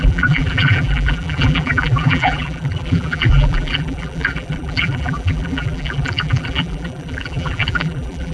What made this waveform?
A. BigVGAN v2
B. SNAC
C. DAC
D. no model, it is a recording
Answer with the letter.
A